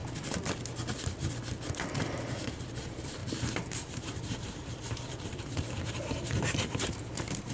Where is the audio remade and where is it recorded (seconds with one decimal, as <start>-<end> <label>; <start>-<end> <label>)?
0.0-2.8 recorded; 2.8-7.5 remade